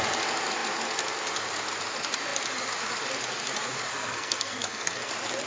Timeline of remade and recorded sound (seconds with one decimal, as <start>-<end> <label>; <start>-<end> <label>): 0.0-3.9 recorded; 3.9-5.1 remade; 5.1-5.5 recorded